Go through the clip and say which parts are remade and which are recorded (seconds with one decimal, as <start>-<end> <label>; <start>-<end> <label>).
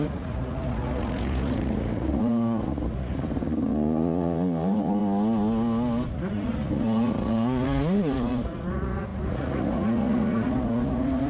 0.0-5.0 remade; 5.0-6.1 recorded; 6.1-11.3 remade